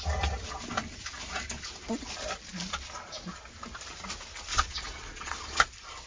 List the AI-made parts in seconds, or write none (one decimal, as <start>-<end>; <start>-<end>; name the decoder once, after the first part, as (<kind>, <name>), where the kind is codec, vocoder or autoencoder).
4.5-5.6 (vocoder, Vocos)